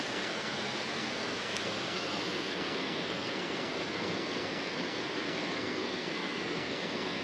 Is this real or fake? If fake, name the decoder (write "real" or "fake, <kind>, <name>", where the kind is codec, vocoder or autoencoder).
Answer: fake, codec, SNAC